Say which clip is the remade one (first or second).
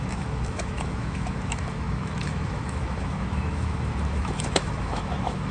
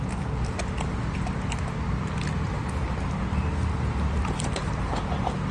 first